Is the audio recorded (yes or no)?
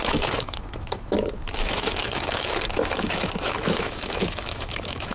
no